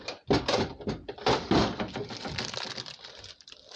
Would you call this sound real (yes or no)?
yes